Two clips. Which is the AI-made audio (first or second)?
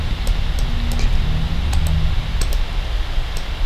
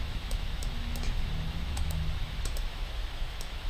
second